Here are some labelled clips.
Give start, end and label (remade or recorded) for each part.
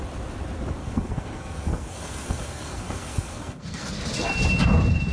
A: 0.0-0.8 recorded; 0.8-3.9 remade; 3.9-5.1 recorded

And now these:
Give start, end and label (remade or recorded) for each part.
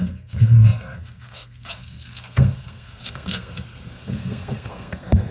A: 0.0-5.3 remade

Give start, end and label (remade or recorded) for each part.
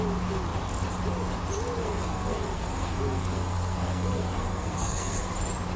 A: 0.0-1.8 recorded; 1.8-5.3 remade; 5.3-5.8 recorded